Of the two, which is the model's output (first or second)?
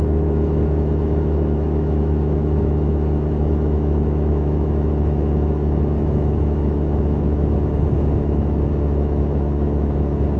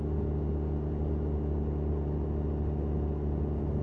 first